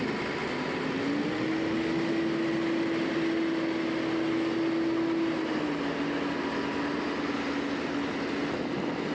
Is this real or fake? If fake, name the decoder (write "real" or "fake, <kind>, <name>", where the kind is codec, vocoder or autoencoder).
real